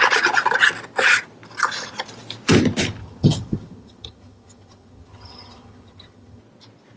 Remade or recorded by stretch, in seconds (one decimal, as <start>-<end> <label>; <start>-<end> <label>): 0.0-3.0 recorded; 3.0-6.4 remade; 6.4-7.0 recorded

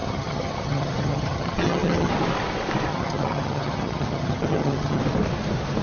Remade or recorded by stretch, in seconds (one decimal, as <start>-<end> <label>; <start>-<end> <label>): 0.0-2.1 remade; 2.1-2.9 recorded; 2.9-5.0 remade; 5.0-5.8 recorded